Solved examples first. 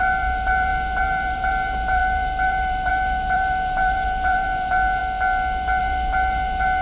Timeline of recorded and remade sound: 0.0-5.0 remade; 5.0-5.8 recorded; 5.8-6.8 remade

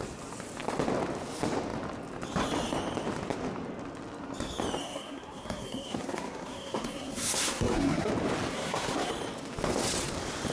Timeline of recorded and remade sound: 0.0-4.8 recorded; 4.8-8.1 remade; 8.1-8.5 recorded; 8.5-9.1 remade; 9.1-10.5 recorded

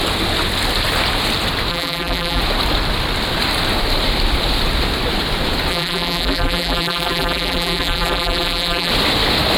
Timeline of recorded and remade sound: 0.0-1.7 recorded; 1.7-2.4 remade; 2.4-5.7 recorded; 5.7-8.9 remade; 8.9-9.6 recorded